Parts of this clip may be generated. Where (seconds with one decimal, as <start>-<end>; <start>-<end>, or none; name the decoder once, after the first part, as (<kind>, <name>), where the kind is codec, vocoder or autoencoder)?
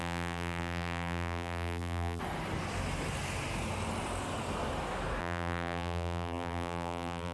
0.0-2.2 (vocoder, BigVGAN v2); 5.2-7.3